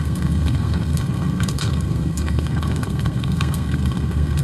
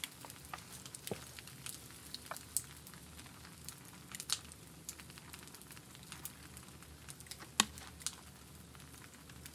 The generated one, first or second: first